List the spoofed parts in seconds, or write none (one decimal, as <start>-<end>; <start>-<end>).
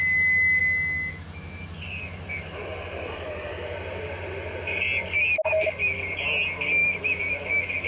0.6-2.8; 6.8-7.9